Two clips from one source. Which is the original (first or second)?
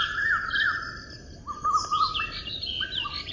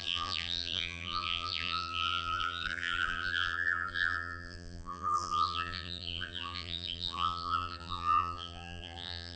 first